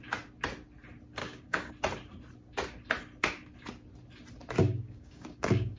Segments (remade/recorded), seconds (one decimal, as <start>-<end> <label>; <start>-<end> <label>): 0.0-1.2 recorded; 1.2-1.7 remade; 1.7-4.6 recorded; 4.6-5.8 remade